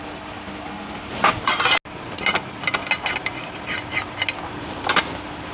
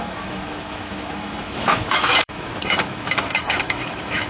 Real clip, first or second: first